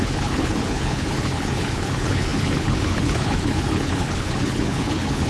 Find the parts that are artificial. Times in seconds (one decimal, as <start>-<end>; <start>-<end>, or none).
0.0-5.3